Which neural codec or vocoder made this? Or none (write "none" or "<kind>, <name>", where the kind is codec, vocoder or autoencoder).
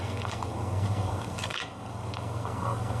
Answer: codec, SNAC